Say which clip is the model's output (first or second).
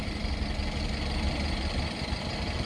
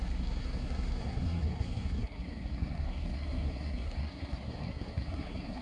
second